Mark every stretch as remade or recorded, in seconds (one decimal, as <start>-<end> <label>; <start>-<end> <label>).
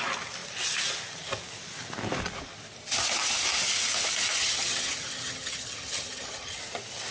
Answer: 0.0-4.4 recorded; 4.4-6.6 remade; 6.6-7.1 recorded